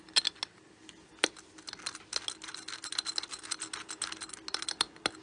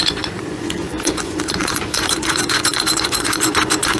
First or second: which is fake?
second